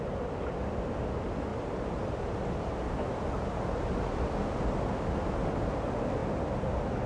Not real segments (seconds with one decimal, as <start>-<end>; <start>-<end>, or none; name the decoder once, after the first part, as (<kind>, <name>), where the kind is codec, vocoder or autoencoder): none